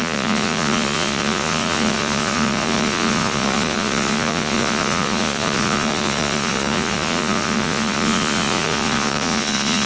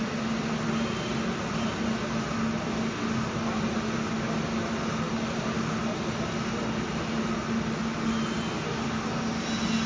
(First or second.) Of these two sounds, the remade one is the first